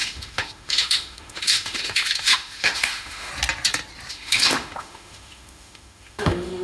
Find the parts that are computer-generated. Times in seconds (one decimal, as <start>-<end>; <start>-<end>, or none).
0.0-3.3; 4.1-6.6